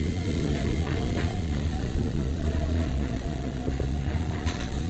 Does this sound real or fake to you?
fake